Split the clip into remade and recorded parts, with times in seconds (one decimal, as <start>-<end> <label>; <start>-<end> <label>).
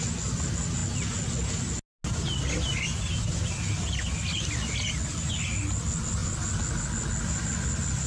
0.0-8.1 recorded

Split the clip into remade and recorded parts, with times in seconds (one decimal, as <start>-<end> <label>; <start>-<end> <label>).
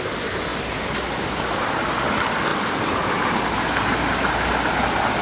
0.0-5.2 recorded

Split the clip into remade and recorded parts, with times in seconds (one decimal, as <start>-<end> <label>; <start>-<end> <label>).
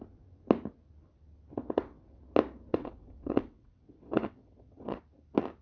0.0-1.5 recorded; 1.5-2.2 remade; 2.2-2.7 recorded; 2.7-5.0 remade; 5.0-5.6 recorded